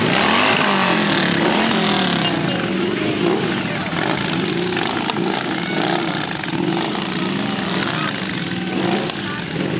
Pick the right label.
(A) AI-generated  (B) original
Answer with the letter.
B